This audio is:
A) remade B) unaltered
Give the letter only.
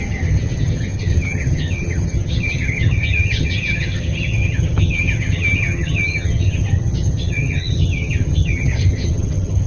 A